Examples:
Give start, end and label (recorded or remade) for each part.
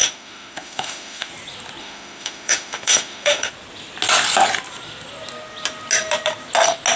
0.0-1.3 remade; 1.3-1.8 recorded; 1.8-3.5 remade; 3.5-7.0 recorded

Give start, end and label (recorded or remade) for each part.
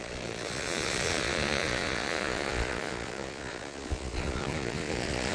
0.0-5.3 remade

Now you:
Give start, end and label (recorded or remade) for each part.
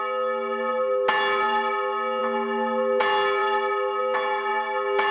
0.0-5.1 recorded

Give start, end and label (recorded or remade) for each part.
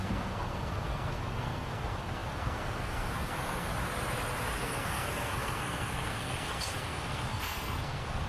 0.0-3.7 remade; 3.7-4.6 recorded; 4.6-8.3 remade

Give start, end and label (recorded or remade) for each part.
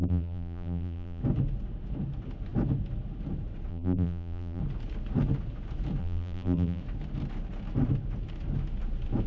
0.0-1.2 remade; 1.2-3.7 recorded; 3.7-4.6 remade; 4.6-6.0 recorded; 6.0-6.8 remade; 6.8-9.3 recorded